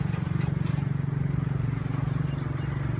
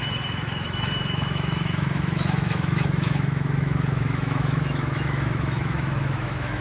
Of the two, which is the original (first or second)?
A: first